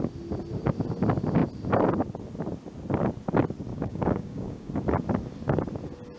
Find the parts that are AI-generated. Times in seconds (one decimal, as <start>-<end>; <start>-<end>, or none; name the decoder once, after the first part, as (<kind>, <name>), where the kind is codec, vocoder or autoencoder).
3.7-4.7 (codec, DAC)